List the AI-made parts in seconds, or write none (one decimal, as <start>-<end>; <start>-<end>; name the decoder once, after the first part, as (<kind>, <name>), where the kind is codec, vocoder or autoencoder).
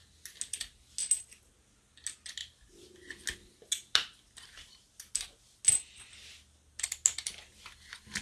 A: none